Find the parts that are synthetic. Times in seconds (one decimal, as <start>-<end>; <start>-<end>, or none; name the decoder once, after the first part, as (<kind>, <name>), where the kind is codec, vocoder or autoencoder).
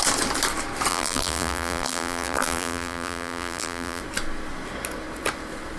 0.9-4.0 (vocoder, BigVGAN v2)